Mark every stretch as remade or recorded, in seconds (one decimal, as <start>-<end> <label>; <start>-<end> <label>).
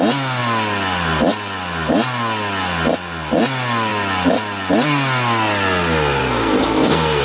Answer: 0.0-6.2 recorded; 6.2-7.2 remade